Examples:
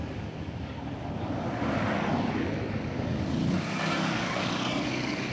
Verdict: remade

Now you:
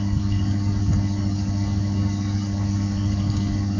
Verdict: remade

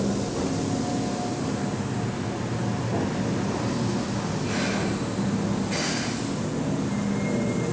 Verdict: recorded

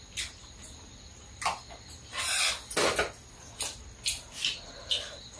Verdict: recorded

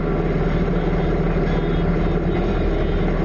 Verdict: recorded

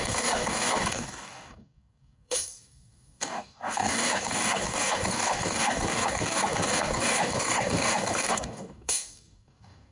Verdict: remade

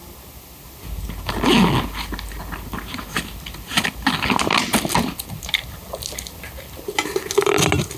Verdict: recorded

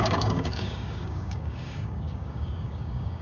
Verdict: remade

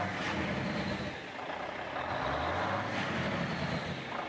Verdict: recorded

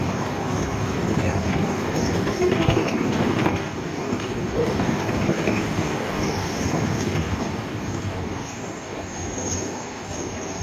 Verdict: remade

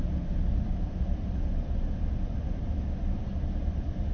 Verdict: recorded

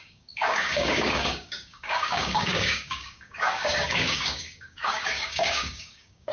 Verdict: remade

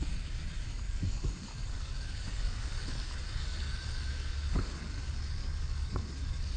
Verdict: remade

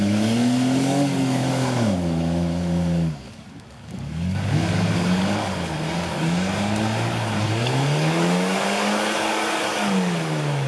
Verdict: remade